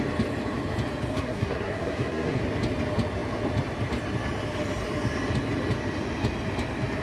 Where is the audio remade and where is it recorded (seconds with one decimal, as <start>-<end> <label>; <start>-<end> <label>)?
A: 0.0-1.1 recorded; 1.1-2.4 remade; 2.4-7.0 recorded